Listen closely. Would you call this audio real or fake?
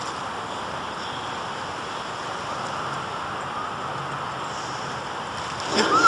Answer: real